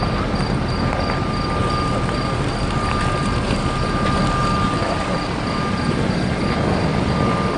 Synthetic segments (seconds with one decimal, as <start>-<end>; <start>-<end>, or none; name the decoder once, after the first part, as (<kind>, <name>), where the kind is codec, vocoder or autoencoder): 1.6-4.2 (vocoder, BigVGAN v2); 4.8-6.4